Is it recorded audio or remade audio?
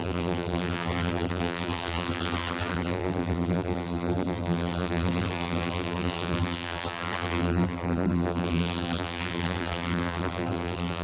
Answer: remade